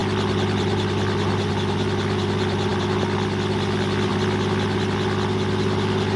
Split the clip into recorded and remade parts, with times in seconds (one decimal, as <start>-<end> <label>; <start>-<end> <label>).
0.0-6.2 recorded